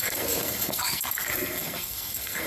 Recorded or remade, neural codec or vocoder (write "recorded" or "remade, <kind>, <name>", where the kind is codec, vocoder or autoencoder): remade, codec, SNAC